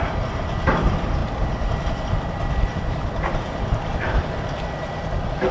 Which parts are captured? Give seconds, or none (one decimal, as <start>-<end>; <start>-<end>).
none